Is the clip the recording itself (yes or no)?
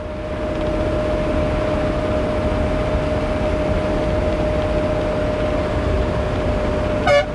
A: yes